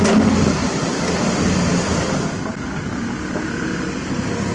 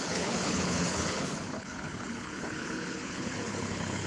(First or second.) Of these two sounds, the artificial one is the second